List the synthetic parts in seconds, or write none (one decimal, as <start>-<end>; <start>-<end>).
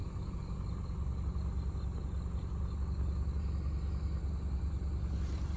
3.4-4.2